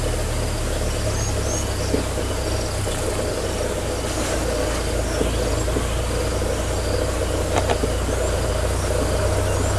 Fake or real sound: real